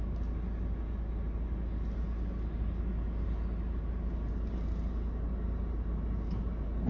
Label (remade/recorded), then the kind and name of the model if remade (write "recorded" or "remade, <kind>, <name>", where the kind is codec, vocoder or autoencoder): recorded